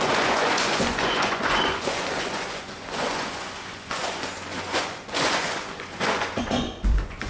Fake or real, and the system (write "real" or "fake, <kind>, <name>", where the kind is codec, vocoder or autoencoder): fake, vocoder, Vocos